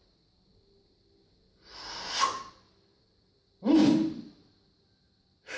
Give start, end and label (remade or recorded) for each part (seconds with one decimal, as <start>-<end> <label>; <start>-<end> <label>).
0.0-5.6 recorded